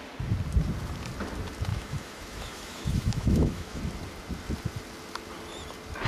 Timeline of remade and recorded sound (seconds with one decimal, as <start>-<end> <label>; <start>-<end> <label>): 0.0-1.7 recorded; 1.7-3.8 remade; 3.8-6.1 recorded